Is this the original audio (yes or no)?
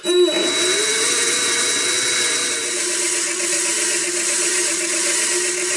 yes